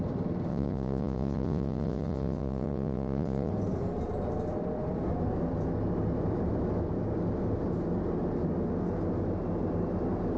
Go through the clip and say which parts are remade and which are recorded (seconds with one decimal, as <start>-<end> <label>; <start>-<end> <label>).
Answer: 0.0-0.5 recorded; 0.5-3.5 remade; 3.5-10.4 recorded